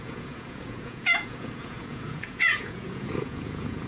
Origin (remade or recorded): remade